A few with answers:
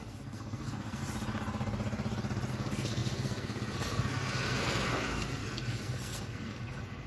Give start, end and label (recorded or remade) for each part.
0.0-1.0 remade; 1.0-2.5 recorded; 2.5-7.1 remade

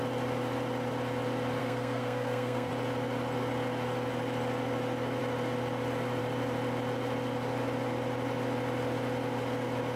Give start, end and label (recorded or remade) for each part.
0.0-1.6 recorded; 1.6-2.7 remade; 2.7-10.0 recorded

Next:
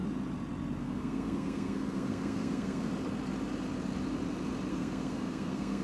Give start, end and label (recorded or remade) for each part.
0.0-0.8 recorded; 0.8-2.9 remade; 2.9-4.7 recorded; 4.7-5.8 remade